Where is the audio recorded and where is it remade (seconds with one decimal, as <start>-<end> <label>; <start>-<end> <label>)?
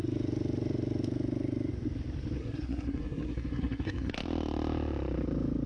0.0-2.4 recorded; 2.4-4.1 remade; 4.1-5.7 recorded